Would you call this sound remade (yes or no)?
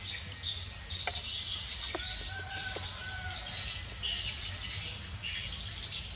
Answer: no